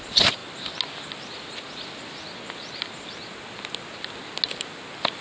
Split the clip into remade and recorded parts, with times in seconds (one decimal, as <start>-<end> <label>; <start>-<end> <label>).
0.0-5.2 recorded